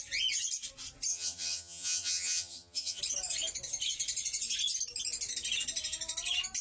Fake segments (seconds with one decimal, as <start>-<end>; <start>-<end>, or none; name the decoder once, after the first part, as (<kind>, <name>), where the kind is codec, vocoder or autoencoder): 1.1-3.0 (vocoder, HiFi-GAN)